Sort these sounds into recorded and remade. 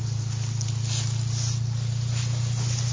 recorded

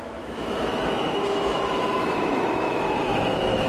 remade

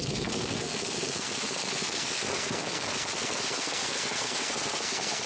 remade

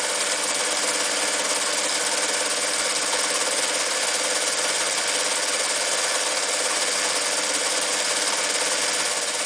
recorded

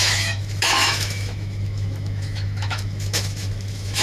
remade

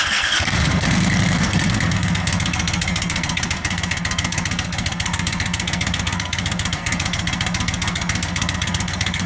remade